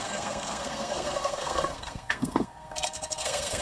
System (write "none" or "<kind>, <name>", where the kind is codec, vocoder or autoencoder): codec, SNAC